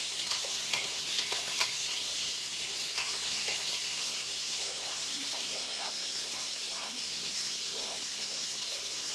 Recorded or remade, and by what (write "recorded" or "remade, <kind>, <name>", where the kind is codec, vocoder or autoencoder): remade, codec, SNAC